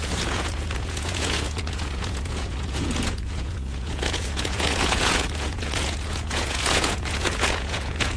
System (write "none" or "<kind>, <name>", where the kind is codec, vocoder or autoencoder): vocoder, Vocos